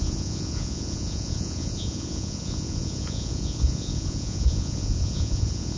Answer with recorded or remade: remade